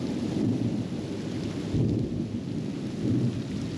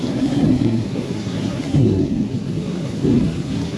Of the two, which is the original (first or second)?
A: first